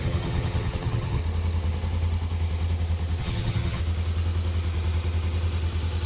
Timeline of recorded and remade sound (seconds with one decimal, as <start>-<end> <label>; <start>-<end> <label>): 0.0-1.2 remade; 1.2-3.2 recorded; 3.2-3.8 remade; 3.8-6.1 recorded